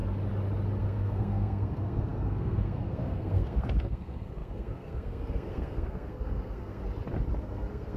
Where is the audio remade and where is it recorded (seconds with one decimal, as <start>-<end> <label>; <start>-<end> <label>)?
0.0-0.8 recorded; 0.8-6.8 remade; 6.8-7.4 recorded; 7.4-8.0 remade